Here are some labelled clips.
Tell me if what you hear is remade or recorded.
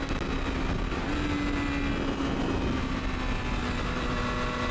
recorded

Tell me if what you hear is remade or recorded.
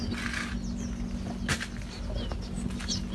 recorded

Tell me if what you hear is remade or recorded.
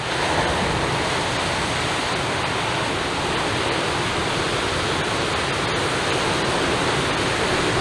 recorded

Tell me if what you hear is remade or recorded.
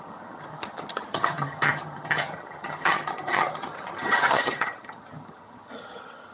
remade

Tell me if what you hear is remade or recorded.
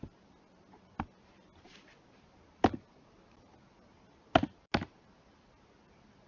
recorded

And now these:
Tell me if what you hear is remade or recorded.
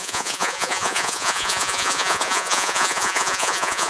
remade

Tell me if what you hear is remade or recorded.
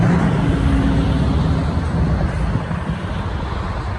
recorded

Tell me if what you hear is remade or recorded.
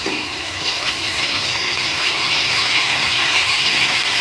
remade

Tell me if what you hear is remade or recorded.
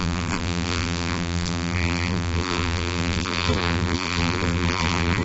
remade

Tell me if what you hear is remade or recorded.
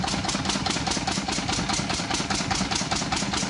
recorded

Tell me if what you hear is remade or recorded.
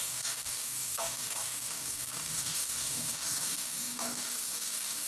remade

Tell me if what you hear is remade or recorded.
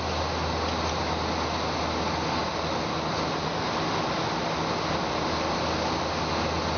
recorded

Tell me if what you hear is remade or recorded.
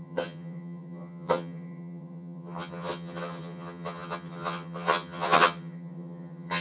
remade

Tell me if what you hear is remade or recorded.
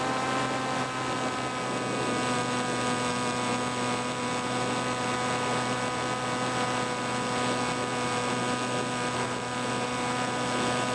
recorded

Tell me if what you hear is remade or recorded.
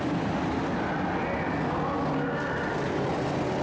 recorded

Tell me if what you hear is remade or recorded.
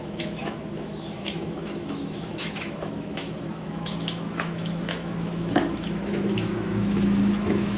remade